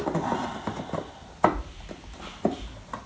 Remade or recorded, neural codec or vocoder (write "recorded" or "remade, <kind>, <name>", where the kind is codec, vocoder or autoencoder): recorded